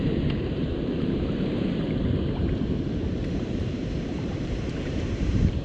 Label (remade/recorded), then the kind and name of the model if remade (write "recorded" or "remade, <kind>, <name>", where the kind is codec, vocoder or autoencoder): remade, vocoder, BigVGAN v2